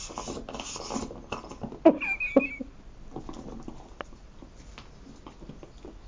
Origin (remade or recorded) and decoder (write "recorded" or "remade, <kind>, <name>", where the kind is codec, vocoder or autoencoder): recorded